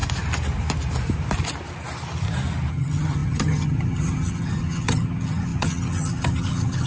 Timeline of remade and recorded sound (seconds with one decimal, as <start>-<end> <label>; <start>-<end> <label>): 0.0-2.7 recorded; 2.7-6.9 remade